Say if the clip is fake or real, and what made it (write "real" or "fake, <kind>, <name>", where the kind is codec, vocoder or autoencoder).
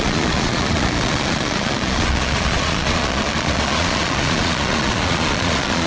fake, vocoder, Vocos